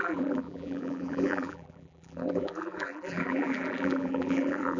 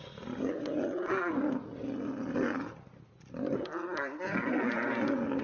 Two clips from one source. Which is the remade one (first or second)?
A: first